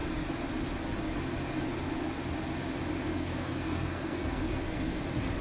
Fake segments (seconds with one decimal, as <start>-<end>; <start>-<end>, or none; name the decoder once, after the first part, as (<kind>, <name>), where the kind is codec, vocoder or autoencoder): 3.1-5.0 (codec, SNAC)